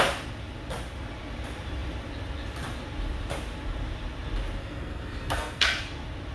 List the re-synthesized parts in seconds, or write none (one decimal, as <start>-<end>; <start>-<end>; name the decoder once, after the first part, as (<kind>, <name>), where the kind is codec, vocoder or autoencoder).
4.6-5.8 (codec, SNAC)